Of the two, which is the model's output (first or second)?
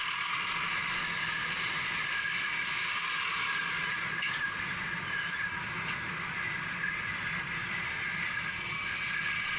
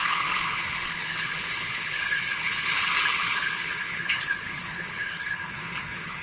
second